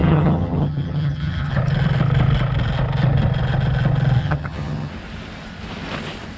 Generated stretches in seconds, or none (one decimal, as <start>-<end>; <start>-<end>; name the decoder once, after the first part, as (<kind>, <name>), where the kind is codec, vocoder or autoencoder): 0.0-1.5 (vocoder, HiFi-GAN); 4.2-4.9